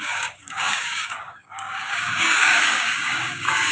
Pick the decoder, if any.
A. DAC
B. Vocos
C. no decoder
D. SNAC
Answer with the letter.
A